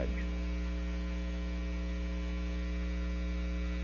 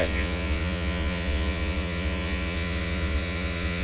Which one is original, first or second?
first